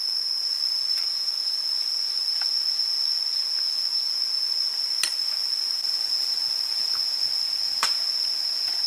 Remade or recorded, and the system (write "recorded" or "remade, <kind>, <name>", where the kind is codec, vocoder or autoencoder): recorded